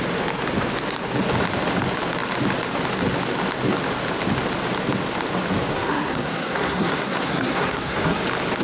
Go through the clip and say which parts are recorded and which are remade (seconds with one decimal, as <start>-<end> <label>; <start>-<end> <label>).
0.0-5.7 recorded; 5.7-8.2 remade; 8.2-8.6 recorded